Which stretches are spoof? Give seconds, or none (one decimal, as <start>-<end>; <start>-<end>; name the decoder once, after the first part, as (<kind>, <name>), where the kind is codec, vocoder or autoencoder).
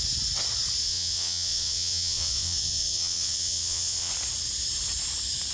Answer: 0.8-4.1 (vocoder, WaveNeXt)